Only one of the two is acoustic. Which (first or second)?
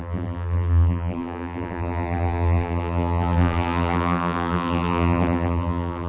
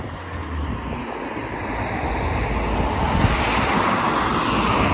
second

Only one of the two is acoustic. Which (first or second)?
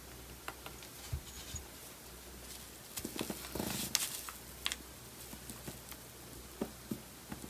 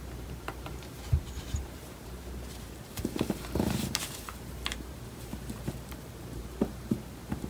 first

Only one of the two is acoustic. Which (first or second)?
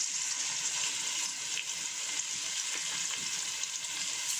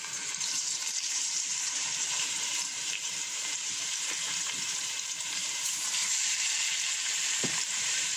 first